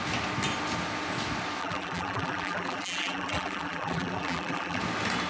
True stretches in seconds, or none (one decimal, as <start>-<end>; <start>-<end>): 0.0-1.6; 4.8-5.3